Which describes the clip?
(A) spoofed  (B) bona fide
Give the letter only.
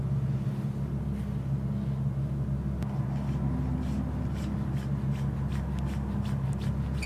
B